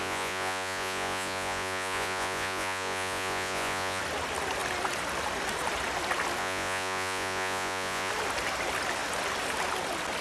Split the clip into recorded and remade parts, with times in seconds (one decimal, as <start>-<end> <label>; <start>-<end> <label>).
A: 0.0-4.0 remade; 4.0-6.4 recorded; 6.4-8.1 remade; 8.1-10.2 recorded